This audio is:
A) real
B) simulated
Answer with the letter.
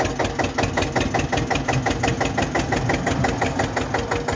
A